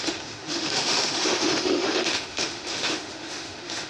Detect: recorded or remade remade